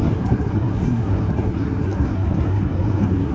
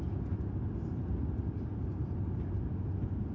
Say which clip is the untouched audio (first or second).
second